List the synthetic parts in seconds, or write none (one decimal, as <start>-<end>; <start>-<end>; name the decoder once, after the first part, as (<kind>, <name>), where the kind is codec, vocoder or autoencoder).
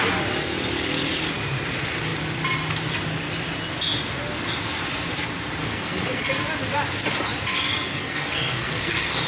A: 5.6-6.3 (codec, SNAC); 7.5-9.3